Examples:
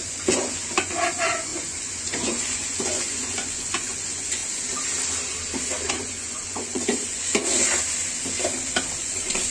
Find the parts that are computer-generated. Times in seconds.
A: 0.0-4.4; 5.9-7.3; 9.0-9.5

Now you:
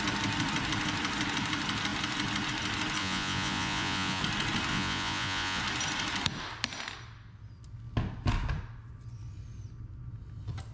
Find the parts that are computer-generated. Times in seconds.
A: 3.0-4.2; 4.7-5.6

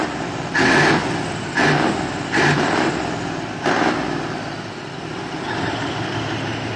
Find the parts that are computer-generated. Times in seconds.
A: none